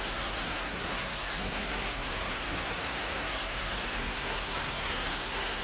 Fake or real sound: fake